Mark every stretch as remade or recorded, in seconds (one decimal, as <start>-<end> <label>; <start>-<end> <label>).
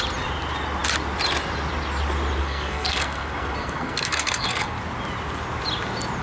0.0-2.4 recorded; 2.4-4.8 remade; 4.8-6.2 recorded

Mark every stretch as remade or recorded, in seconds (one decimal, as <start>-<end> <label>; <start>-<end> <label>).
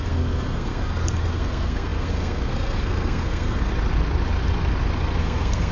0.0-3.7 remade; 3.7-5.2 recorded; 5.2-5.7 remade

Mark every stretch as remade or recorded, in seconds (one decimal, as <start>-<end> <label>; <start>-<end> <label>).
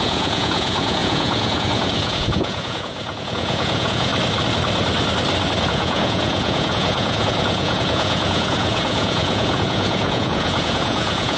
0.0-4.1 remade; 4.1-5.7 recorded; 5.7-11.4 remade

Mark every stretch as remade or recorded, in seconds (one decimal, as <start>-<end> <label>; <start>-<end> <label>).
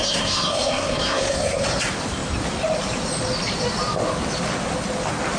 0.0-1.6 remade; 1.6-5.4 recorded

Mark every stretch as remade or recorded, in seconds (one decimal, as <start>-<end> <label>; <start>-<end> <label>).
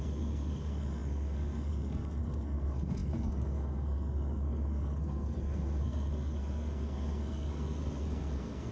0.0-8.7 remade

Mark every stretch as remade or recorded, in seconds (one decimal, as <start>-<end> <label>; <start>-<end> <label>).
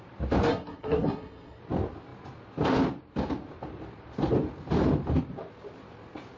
0.0-0.5 recorded; 0.5-1.6 remade; 1.6-6.4 recorded